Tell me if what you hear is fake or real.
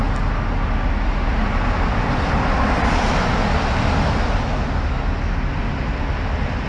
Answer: real